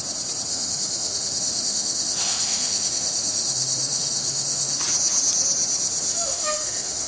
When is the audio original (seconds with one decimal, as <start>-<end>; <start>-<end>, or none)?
0.0-0.5; 4.8-6.1

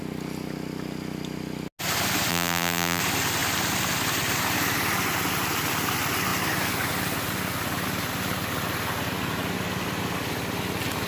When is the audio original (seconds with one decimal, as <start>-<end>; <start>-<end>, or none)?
0.0-2.3; 3.0-11.1

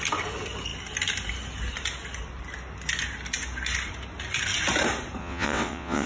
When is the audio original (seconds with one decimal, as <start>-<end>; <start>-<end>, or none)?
0.0-5.2

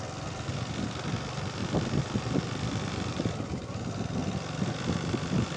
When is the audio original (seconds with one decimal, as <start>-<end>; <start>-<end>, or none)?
0.0-5.6

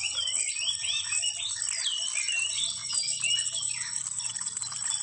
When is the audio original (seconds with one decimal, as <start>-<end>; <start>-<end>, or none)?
0.0-5.0

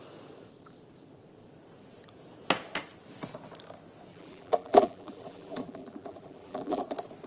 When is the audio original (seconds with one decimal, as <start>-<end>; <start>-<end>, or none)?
0.0-4.1; 6.8-7.3

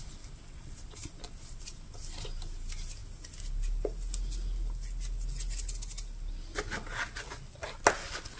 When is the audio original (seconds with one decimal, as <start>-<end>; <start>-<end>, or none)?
0.0-8.4

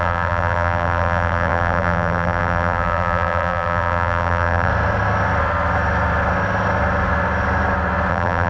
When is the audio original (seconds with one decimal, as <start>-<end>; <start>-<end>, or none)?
4.7-8.1